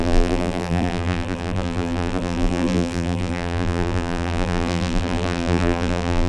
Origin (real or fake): fake